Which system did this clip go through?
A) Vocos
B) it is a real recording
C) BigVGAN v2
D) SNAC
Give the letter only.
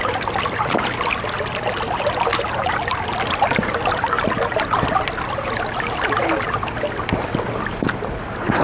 B